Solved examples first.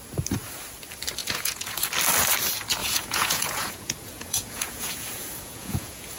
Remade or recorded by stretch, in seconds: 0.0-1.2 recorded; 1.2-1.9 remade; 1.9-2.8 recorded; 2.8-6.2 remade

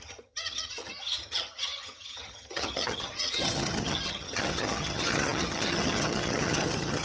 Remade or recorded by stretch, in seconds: 0.0-7.0 remade

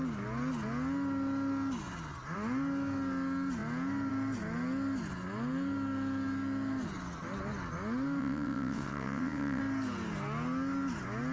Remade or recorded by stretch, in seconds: 0.0-8.2 recorded; 8.2-9.6 remade; 9.6-11.3 recorded